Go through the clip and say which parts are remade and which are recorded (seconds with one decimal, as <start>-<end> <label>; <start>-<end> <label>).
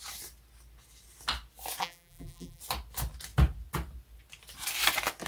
0.0-1.8 recorded; 1.8-2.6 remade; 2.6-5.3 recorded